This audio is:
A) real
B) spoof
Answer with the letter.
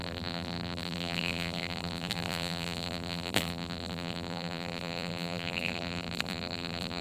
B